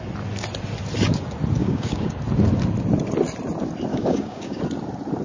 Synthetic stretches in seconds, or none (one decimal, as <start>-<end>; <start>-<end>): 1.6-2.2; 3.9-4.6